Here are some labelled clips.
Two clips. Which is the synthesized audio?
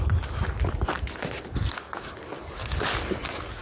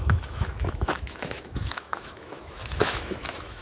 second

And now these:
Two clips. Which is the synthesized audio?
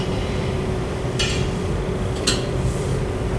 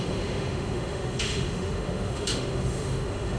second